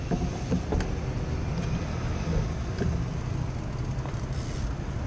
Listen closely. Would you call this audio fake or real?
real